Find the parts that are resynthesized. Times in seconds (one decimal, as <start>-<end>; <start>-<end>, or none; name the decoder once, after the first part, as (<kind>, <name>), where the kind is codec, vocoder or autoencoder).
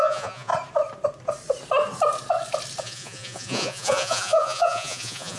0.0-0.5 (vocoder, Vocos); 2.8-5.4